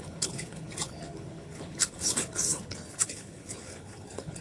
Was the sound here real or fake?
fake